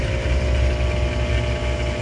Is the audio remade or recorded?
recorded